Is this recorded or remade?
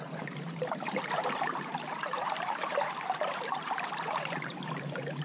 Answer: remade